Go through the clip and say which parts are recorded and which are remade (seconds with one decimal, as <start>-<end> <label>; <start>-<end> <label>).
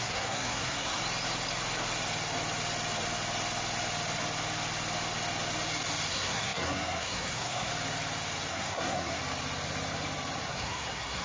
0.0-1.0 remade; 1.0-6.1 recorded; 6.1-7.7 remade; 7.7-8.5 recorded; 8.5-9.2 remade; 9.2-10.5 recorded; 10.5-11.2 remade